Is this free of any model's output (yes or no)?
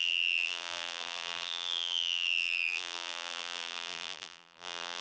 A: no